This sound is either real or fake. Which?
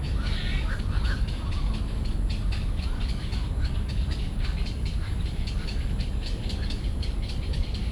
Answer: fake